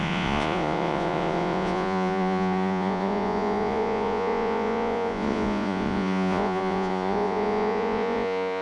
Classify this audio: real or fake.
fake